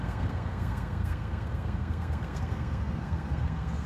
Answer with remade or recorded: remade